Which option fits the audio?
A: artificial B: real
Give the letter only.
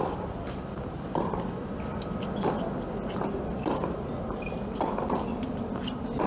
B